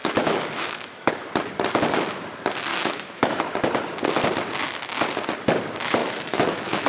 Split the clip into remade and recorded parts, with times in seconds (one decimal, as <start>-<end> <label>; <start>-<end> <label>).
0.0-1.1 remade; 1.1-2.7 recorded; 2.7-3.4 remade; 3.4-6.0 recorded; 6.0-6.9 remade